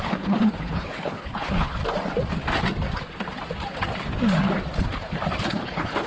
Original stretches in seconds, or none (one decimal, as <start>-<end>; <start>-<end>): 1.8-5.5

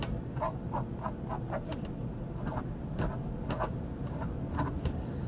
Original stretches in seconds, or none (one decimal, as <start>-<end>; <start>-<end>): 0.0-5.3

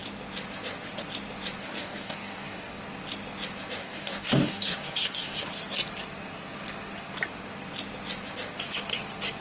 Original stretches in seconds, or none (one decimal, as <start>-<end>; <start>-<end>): 0.0-1.6; 2.8-3.8; 5.4-9.4

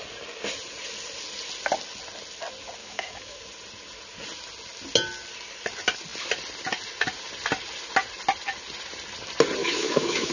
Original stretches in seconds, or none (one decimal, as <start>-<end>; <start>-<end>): 0.0-2.8; 3.4-9.6

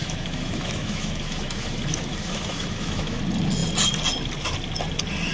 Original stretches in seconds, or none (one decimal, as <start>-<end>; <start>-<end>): 3.2-5.3

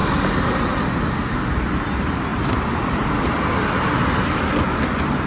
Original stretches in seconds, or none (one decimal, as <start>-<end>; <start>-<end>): 0.0-5.3